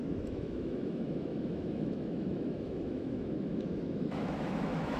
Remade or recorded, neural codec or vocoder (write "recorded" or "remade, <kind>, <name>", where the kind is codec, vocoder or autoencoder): remade, autoencoder, DAC-VAE